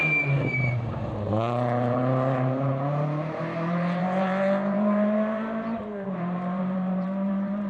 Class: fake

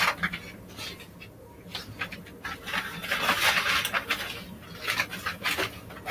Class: real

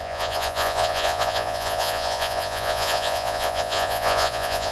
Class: fake